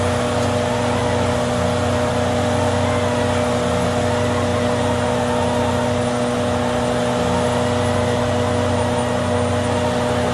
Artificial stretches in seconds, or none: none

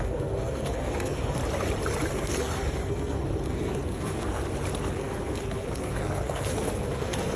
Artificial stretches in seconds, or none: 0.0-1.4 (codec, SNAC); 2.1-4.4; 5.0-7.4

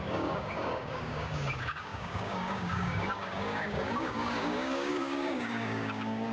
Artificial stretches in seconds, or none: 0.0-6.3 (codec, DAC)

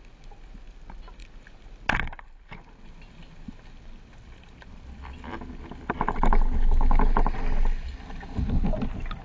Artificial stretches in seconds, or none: none

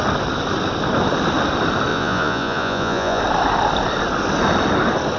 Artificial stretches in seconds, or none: 1.9-3.2 (vocoder, Vocos)